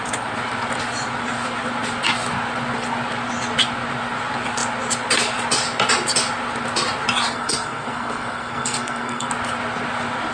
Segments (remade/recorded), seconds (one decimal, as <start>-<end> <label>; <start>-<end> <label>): 0.0-7.3 recorded; 7.3-9.3 remade; 9.3-10.3 recorded